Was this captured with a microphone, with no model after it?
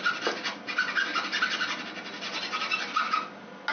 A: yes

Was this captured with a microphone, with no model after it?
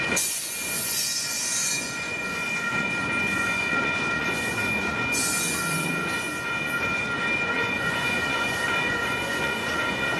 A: no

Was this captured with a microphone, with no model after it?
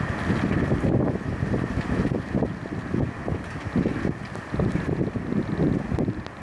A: yes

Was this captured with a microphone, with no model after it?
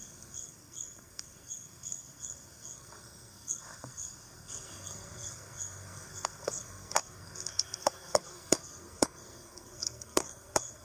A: no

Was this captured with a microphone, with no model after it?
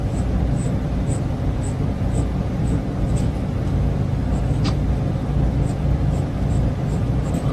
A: no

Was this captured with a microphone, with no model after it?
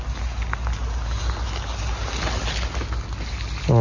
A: yes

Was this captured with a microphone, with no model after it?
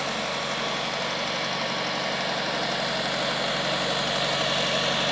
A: yes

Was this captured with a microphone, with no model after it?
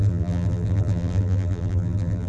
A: no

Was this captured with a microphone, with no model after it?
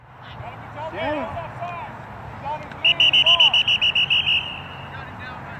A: yes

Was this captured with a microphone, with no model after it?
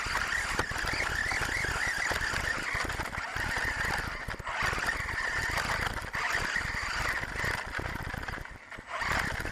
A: yes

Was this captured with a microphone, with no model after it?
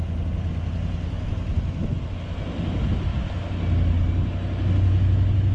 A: yes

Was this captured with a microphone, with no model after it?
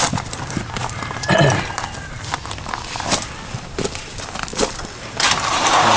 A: no